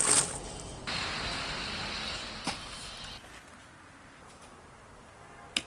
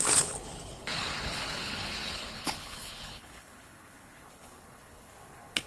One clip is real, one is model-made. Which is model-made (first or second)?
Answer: second